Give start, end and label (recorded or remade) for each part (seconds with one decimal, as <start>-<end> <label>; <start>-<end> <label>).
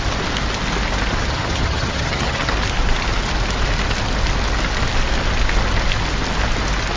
0.0-1.2 recorded; 1.2-2.5 remade; 2.5-7.0 recorded